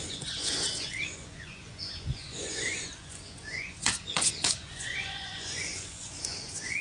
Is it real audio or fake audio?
fake